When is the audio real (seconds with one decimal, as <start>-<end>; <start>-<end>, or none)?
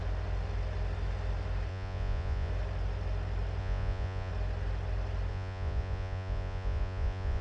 0.0-1.7; 2.5-3.6; 4.3-5.3